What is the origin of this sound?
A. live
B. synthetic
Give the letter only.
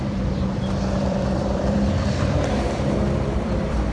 B